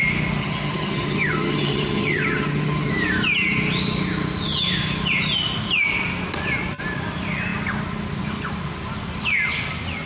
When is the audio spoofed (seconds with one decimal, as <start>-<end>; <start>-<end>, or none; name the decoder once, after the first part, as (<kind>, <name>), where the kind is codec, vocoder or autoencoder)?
0.4-2.9 (vocoder, HiFi-GAN)